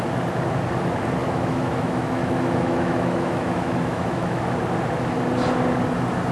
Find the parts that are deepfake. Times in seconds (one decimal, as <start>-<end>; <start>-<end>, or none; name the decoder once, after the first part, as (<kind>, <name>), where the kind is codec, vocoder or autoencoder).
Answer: 1.2-4.4 (autoencoder, DAC-VAE)